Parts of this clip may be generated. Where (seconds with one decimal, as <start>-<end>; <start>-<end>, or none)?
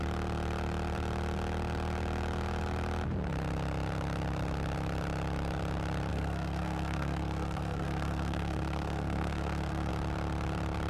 6.1-9.9